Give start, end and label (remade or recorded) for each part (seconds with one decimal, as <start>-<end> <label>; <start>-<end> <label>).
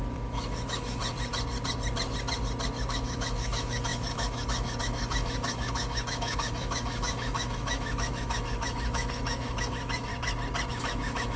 0.0-1.0 remade; 1.0-2.8 recorded; 2.8-10.1 remade; 10.1-10.7 recorded; 10.7-11.4 remade